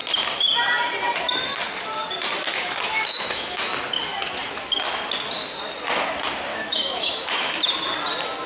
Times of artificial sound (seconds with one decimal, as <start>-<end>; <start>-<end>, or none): 2.5-3.7; 6.5-7.5